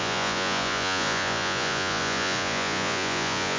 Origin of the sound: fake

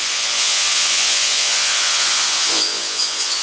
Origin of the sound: fake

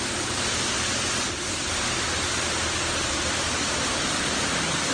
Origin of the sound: real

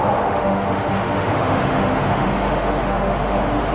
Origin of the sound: fake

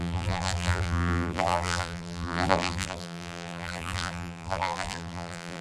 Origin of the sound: fake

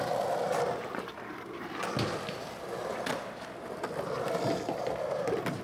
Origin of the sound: real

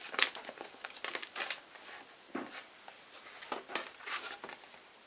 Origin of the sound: real